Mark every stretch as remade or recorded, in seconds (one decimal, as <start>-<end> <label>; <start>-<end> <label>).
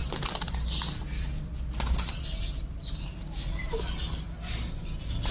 0.0-5.3 recorded